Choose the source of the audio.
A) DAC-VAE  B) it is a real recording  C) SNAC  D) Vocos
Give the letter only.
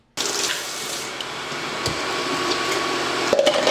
B